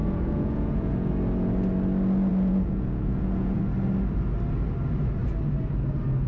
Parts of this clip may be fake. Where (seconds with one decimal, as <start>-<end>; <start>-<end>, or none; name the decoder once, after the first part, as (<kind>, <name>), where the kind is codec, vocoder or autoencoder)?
0.0-1.1 (vocoder, Vocos); 2.3-3.6